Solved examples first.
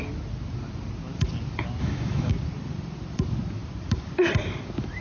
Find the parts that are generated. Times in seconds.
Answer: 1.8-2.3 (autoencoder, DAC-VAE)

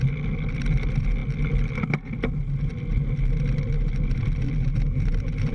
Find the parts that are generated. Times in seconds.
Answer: none

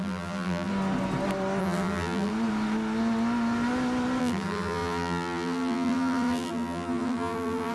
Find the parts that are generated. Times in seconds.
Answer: 0.0-0.7 (vocoder, BigVGAN v2); 1.6-2.3; 4.2-7.7

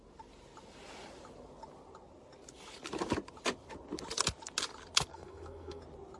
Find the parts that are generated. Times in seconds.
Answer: 5.1-5.8 (codec, SNAC)

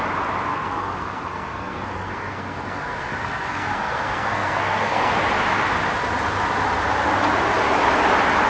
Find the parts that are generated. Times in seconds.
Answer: 0.5-5.1 (codec, SNAC)